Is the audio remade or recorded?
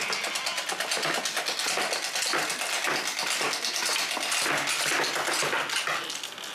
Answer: recorded